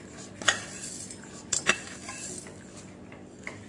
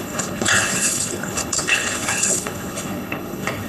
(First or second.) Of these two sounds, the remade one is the second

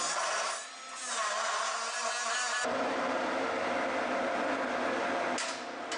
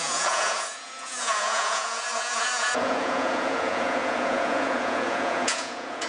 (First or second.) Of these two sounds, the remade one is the second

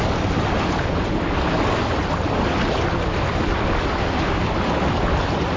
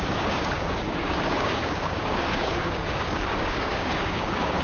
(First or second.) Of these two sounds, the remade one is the second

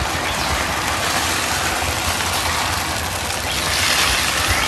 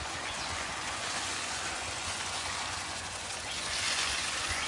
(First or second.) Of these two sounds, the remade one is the second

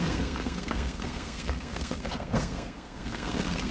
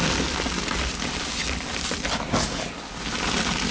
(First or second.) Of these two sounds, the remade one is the first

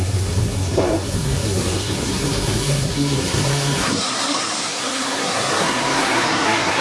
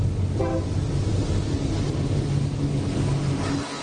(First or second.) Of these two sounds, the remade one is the first